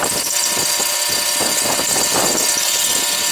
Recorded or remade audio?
recorded